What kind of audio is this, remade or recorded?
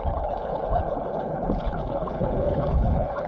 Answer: remade